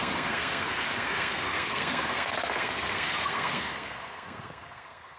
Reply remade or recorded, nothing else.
remade